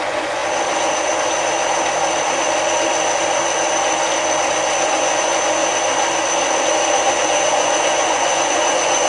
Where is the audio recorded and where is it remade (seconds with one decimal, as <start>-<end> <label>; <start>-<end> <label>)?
0.0-0.4 remade; 0.4-4.9 recorded; 4.9-5.6 remade; 5.6-7.1 recorded; 7.1-9.1 remade